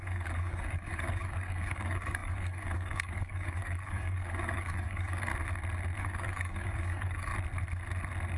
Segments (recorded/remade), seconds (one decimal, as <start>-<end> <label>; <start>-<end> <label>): 0.0-5.3 remade; 5.3-6.0 recorded; 6.0-7.3 remade; 7.3-8.4 recorded